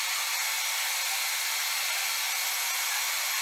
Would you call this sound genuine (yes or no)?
yes